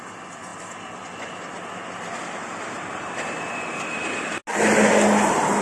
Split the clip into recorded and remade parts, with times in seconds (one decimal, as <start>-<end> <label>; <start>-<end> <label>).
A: 0.0-5.6 recorded